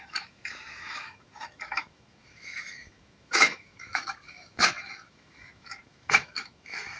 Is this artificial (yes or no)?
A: yes